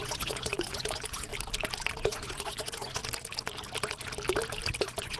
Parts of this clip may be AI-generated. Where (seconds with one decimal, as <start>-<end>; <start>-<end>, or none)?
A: 0.0-1.3; 2.0-3.0; 4.8-5.2